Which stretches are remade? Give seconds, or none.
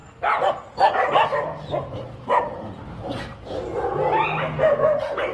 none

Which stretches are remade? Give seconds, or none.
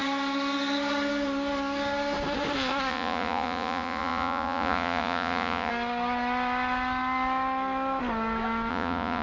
2.9-5.7 (vocoder, Vocos); 8.7-9.2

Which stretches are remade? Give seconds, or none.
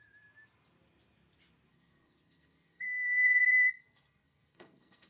1.7-5.1 (codec, SNAC)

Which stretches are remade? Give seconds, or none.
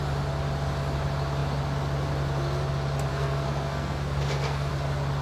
3.1-4.7 (codec, SNAC)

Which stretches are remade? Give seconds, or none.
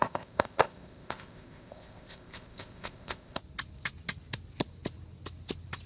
0.0-3.4 (codec, ZipCodec)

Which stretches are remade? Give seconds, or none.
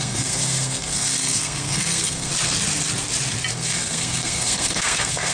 0.0-2.3 (codec, SNAC); 3.5-5.3